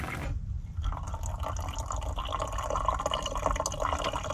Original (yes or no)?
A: yes